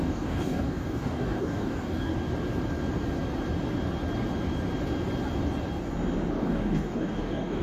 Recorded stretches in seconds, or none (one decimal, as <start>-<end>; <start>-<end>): 2.1-6.3